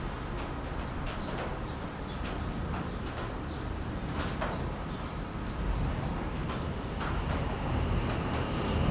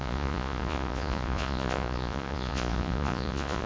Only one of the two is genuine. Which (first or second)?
first